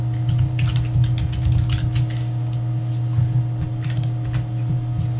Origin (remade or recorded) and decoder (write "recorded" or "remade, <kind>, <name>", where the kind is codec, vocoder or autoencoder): recorded